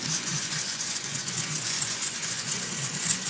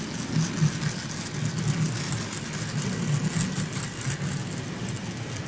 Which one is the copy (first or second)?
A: first